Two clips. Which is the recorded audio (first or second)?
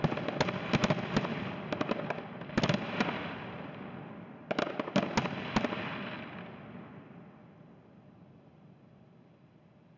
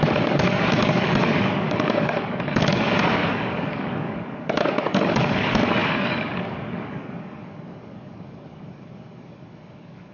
first